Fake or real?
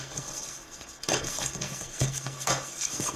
fake